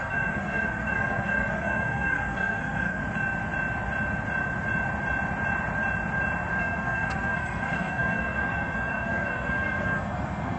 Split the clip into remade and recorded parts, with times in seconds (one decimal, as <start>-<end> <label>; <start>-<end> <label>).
0.0-3.0 remade; 3.0-6.6 recorded; 6.6-10.6 remade